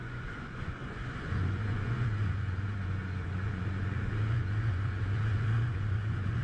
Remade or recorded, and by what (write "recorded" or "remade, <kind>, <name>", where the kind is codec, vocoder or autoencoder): remade, vocoder, Vocos